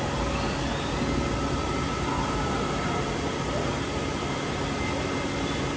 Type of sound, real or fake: real